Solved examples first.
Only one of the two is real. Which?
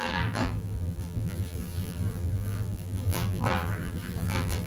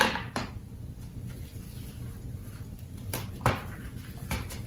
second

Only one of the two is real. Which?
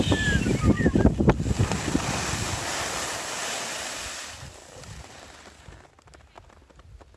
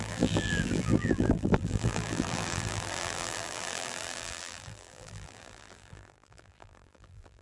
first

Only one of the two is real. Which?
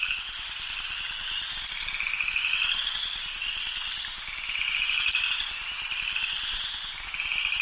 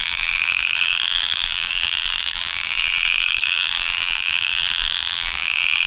first